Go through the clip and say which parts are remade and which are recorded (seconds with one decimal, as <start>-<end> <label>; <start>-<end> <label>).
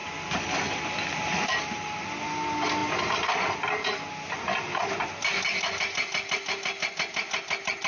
0.0-7.9 recorded